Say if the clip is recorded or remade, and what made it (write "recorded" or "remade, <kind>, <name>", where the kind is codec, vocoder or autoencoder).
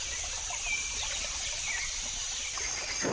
recorded